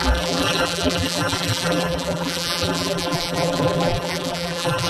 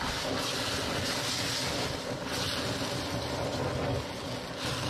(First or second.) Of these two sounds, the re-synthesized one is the first